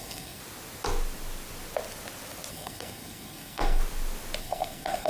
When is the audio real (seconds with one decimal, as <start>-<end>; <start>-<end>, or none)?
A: 0.4-2.5; 3.8-4.4